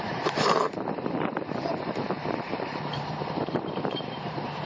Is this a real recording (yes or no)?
no